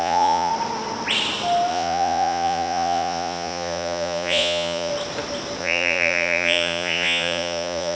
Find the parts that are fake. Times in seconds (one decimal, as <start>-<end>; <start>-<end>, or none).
0.0-0.5; 1.7-4.9; 5.6-7.9